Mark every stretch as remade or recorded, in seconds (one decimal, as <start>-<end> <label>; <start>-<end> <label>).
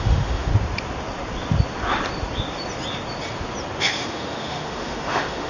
0.0-0.5 remade; 0.5-3.8 recorded; 3.8-5.5 remade